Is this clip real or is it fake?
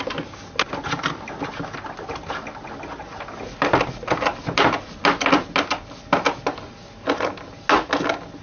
real